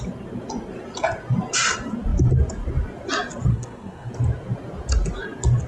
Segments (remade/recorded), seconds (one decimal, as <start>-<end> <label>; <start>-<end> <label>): 0.0-3.5 recorded; 3.5-4.1 remade; 4.1-5.7 recorded